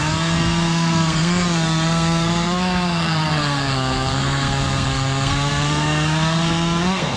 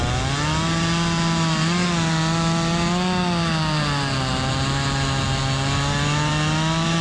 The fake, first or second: first